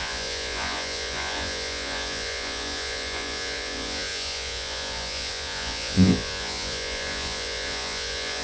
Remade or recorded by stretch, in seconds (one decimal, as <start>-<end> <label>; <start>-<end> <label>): 0.0-8.4 remade